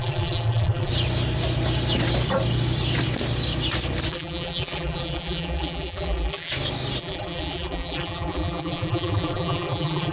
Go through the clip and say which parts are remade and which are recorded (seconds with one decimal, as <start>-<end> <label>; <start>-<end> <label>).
0.0-0.9 remade; 0.9-4.1 recorded; 4.1-6.5 remade; 6.5-7.0 recorded; 7.0-10.1 remade